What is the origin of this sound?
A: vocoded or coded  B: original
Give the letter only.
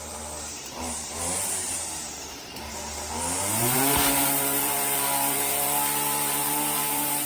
A